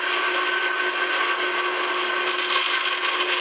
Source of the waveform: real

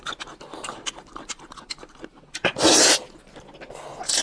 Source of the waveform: real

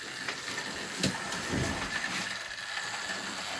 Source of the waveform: real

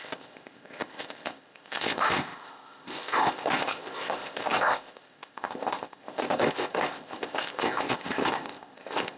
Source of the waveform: fake